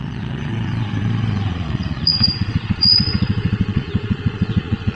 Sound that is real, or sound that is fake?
fake